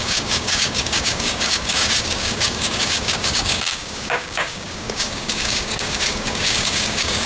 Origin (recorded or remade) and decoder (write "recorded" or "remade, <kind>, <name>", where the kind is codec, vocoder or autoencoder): remade, codec, DAC